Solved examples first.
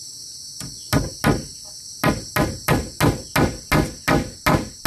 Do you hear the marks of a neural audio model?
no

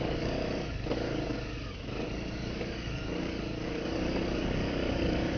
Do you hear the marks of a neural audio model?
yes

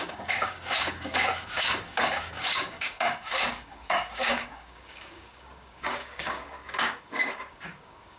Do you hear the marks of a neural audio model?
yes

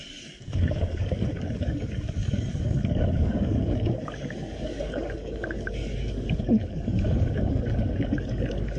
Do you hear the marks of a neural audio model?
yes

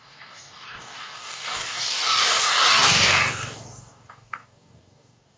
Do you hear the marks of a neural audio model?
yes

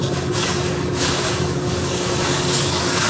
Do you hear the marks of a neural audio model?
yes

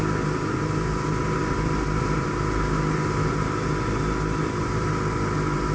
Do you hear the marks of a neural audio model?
no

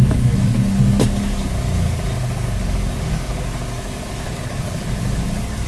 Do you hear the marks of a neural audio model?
yes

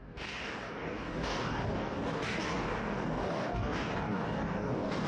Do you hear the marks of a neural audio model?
yes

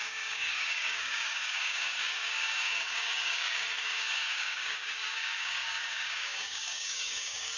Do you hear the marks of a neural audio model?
yes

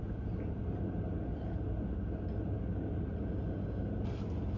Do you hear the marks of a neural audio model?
no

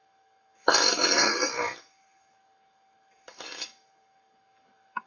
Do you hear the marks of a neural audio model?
yes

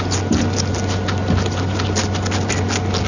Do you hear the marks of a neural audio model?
no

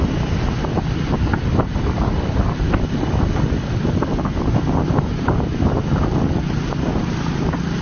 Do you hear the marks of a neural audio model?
no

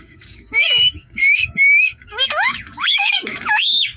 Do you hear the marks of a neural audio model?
yes